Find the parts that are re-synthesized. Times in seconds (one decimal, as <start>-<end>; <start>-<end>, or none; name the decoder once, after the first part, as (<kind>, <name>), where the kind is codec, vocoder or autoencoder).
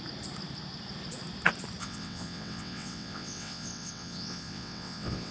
1.8-5.3 (vocoder, WaveNeXt)